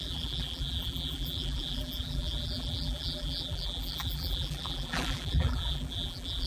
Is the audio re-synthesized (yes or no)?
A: yes